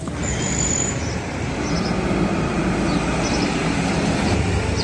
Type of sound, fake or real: real